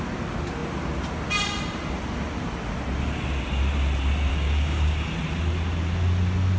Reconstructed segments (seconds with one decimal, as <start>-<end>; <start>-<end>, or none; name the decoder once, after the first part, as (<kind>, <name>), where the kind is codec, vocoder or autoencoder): 4.3-5.1 (codec, DAC)